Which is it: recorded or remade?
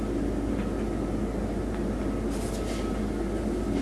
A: recorded